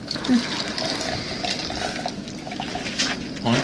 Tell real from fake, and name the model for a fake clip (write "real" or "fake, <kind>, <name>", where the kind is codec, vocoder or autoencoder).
real